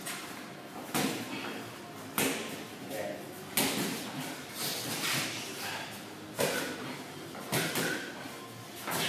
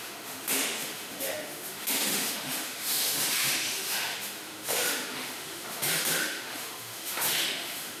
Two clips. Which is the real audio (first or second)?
first